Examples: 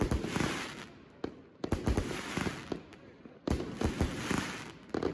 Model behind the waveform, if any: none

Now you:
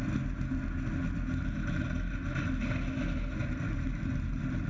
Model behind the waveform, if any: none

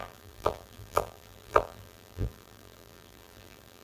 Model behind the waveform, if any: vocoder, BigVGAN v2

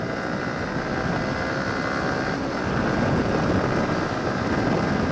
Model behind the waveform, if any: none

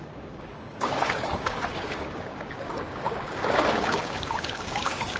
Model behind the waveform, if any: codec, DAC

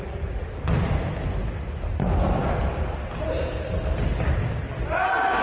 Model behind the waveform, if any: none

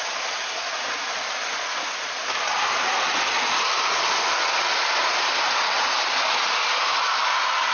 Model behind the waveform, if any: none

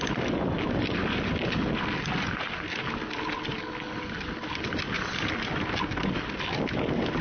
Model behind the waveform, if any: none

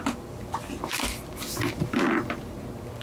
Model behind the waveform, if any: none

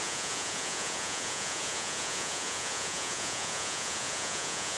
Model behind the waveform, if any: vocoder, Vocos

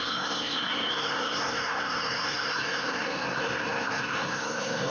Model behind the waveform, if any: codec, SNAC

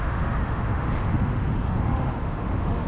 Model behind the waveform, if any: autoencoder, DAC-VAE